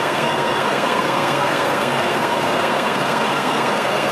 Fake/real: fake